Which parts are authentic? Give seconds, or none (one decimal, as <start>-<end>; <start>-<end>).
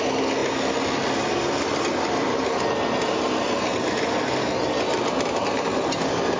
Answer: 0.0-6.4